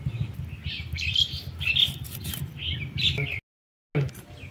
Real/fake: real